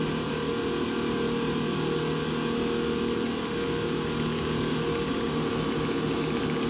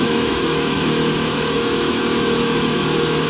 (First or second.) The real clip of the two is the first